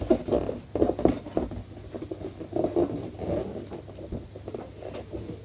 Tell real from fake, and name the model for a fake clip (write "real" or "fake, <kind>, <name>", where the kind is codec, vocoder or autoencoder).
real